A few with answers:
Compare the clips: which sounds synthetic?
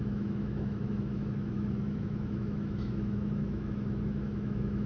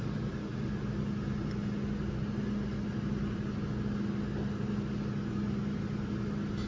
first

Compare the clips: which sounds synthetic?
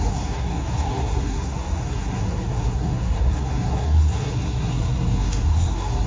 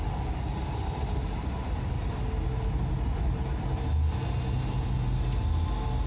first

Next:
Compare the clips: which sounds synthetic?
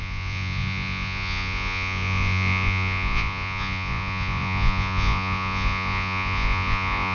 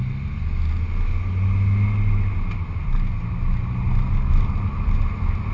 first